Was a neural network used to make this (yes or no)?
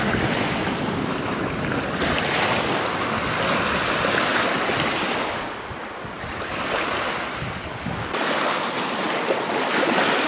no